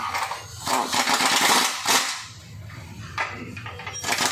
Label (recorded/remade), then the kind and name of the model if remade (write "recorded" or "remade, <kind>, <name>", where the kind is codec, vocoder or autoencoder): recorded